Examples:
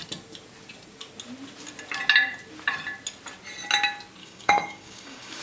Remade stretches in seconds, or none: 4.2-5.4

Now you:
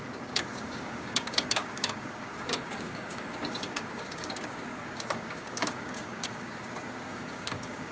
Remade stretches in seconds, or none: 0.0-7.9

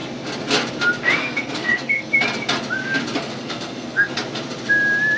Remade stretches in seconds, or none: 1.2-2.1; 3.2-4.1

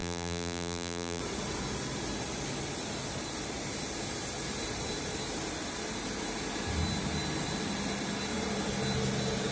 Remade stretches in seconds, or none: 0.0-1.2

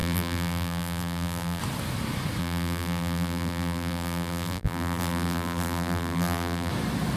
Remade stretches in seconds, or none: 0.0-1.6; 2.4-6.7

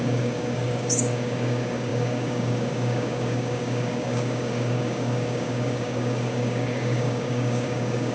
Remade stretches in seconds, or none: 0.0-8.1